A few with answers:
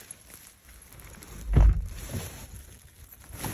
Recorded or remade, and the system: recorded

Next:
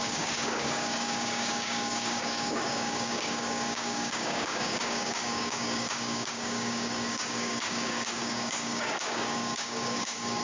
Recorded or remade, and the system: remade, codec, DAC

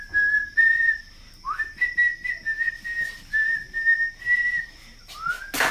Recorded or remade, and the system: recorded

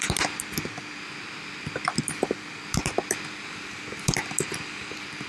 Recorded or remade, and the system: remade, vocoder, BigVGAN v2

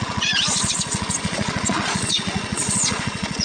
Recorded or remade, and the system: remade, vocoder, Vocos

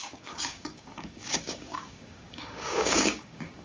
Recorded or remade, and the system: remade, codec, DAC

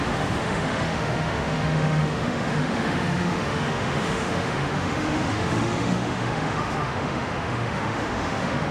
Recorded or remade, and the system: remade, autoencoder, DAC-VAE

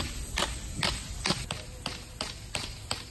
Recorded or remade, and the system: recorded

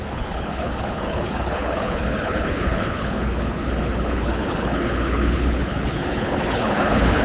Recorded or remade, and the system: remade, codec, HILCodec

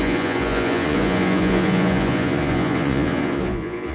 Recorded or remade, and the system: remade, vocoder, Vocos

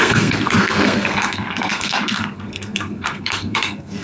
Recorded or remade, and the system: remade, codec, SNAC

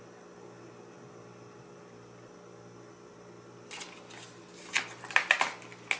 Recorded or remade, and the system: recorded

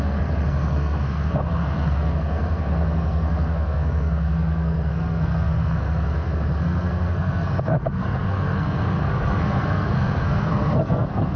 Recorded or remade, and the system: remade, codec, SNAC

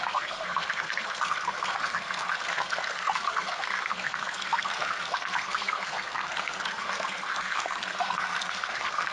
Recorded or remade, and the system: remade, codec, SNAC